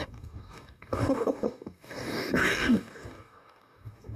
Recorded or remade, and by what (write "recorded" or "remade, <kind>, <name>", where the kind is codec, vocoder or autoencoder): remade, codec, DAC